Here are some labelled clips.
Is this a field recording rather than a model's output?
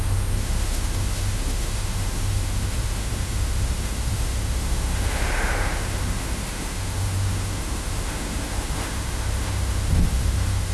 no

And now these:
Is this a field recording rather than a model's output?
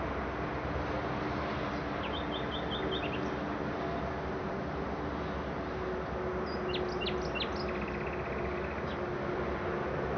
yes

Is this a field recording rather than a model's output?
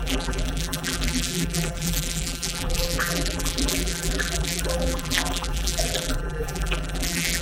no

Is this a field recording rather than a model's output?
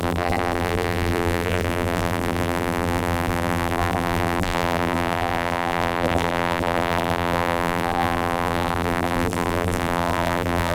no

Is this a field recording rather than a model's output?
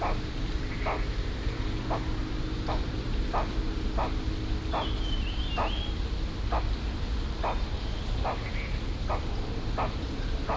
yes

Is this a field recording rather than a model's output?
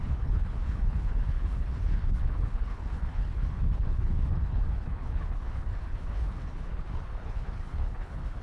no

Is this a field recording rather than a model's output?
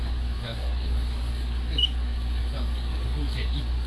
no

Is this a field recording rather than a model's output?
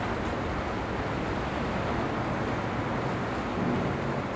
yes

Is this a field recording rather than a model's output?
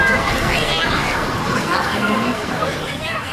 no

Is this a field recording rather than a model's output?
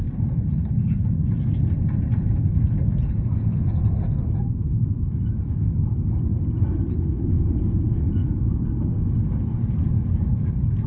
yes